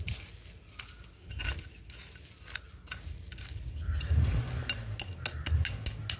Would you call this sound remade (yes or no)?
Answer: no